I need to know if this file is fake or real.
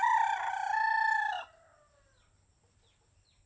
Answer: real